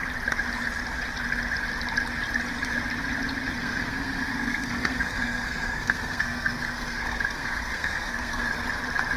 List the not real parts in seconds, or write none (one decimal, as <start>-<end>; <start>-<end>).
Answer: 3.6-8.5